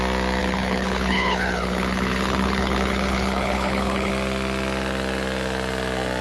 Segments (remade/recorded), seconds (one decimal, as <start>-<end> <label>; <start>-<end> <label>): 0.0-0.4 recorded; 0.4-4.1 remade; 4.1-6.2 recorded